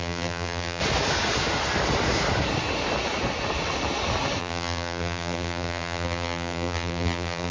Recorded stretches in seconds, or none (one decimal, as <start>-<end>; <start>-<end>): 0.8-4.4